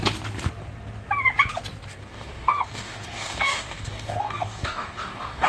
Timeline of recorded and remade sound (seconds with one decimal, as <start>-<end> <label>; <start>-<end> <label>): 0.0-1.9 recorded; 1.9-5.5 remade